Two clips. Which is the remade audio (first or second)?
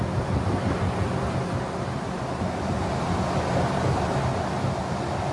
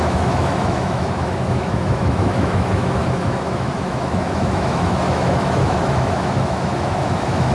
second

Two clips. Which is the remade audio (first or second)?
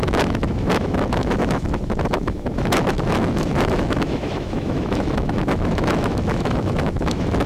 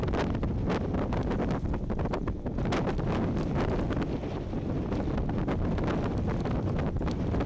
first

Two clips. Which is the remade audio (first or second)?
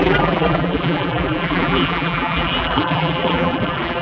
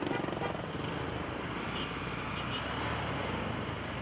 first